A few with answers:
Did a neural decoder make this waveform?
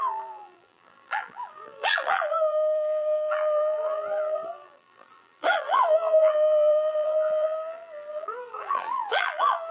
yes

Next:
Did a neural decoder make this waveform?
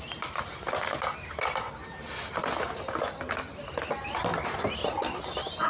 no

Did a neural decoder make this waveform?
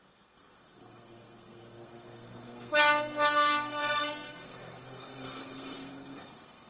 yes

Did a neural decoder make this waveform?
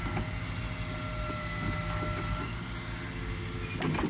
no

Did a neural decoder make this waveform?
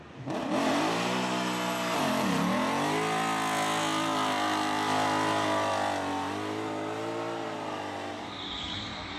no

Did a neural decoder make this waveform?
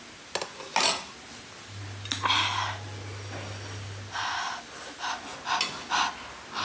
no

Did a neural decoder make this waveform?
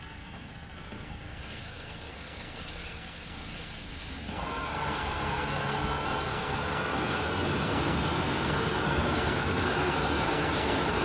yes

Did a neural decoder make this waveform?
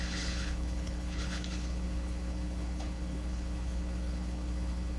yes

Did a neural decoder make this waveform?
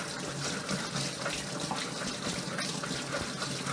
no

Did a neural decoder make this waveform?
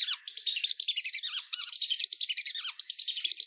no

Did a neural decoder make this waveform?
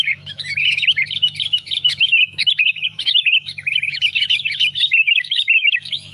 yes